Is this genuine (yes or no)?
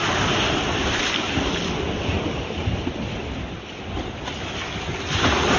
yes